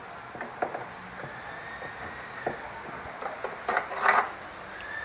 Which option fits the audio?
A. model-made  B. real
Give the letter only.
B